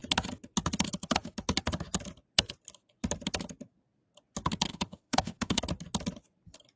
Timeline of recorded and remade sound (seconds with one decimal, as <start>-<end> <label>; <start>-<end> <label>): 0.0-4.7 recorded; 4.7-5.6 remade; 5.6-6.8 recorded